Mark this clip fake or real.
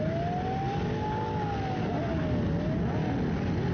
real